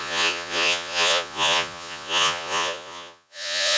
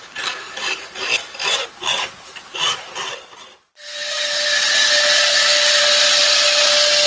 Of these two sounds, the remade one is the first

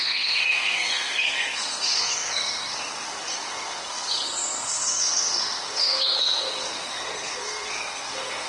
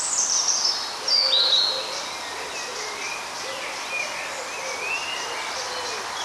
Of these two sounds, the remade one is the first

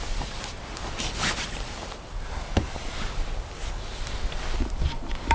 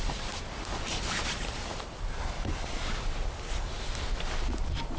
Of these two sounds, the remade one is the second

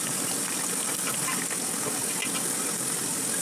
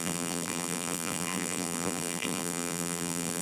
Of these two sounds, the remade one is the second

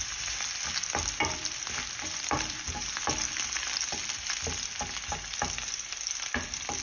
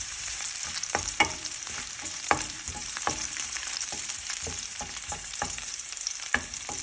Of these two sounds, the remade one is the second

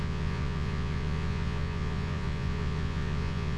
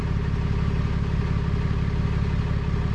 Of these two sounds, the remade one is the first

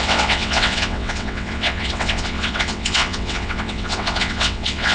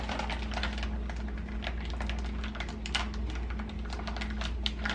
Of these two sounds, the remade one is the first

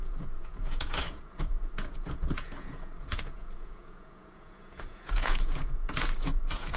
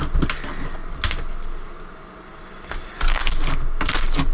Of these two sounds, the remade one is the first